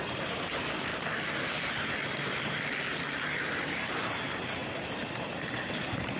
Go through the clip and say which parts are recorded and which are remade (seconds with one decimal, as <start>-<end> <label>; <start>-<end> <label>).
0.0-0.9 remade; 0.9-3.2 recorded; 3.2-4.6 remade; 4.6-5.7 recorded; 5.7-6.2 remade